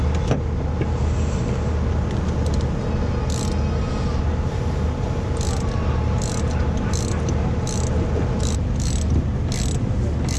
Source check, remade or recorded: recorded